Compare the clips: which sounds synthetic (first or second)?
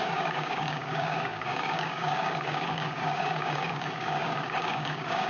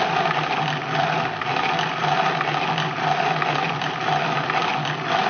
first